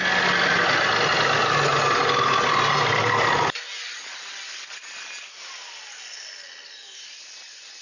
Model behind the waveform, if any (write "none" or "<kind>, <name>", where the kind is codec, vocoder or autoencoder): none